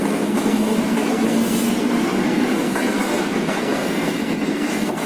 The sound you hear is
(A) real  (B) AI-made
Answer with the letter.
B